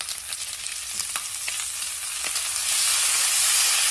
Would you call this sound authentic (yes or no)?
yes